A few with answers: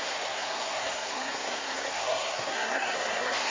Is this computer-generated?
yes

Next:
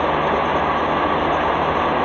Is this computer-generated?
no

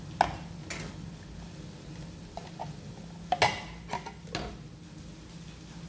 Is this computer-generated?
no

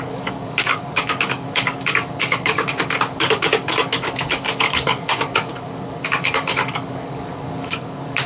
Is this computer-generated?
yes